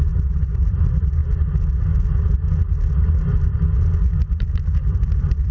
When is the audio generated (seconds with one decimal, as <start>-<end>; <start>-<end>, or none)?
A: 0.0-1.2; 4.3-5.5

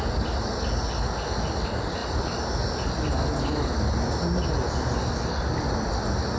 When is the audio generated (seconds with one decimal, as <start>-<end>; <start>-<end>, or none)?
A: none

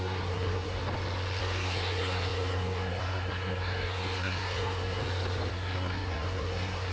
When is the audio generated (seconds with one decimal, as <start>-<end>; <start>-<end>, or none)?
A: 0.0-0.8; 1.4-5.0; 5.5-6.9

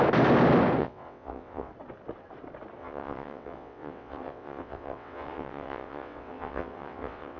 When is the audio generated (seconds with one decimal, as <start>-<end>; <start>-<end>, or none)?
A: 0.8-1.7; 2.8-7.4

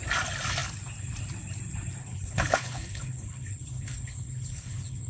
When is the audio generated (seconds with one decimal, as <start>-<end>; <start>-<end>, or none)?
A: 2.0-5.1

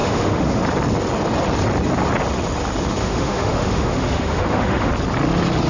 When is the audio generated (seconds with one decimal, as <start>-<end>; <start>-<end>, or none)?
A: 0.0-0.6; 3.0-4.9

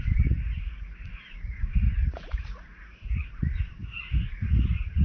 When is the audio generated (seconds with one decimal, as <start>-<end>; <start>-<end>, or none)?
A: 0.0-5.0

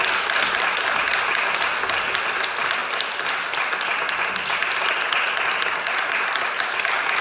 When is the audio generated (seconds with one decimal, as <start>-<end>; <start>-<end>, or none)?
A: none